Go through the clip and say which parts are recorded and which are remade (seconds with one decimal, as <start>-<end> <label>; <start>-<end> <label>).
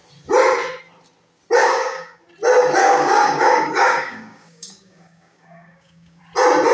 0.0-1.6 recorded; 1.6-2.2 remade; 2.2-2.8 recorded; 2.8-6.2 remade; 6.2-6.7 recorded